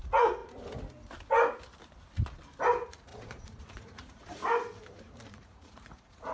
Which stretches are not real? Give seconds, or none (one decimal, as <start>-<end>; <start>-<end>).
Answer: 0.0-0.4; 2.6-4.4; 5.3-6.3